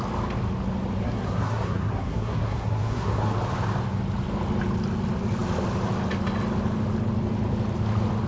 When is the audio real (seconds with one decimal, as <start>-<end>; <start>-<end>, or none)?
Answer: 0.0-1.0; 3.3-8.3